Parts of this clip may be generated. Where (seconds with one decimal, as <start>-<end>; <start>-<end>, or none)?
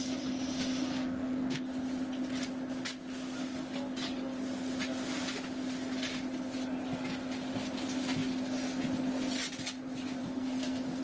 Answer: 0.9-1.6; 10.2-11.0